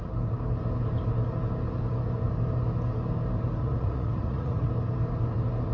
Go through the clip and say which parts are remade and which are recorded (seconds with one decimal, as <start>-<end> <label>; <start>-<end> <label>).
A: 0.0-3.6 recorded; 3.6-4.7 remade; 4.7-5.7 recorded